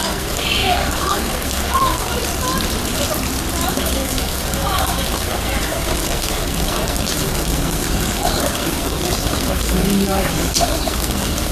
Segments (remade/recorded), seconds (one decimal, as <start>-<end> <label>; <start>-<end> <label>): 0.0-2.1 remade; 2.1-3.7 recorded; 3.7-11.5 remade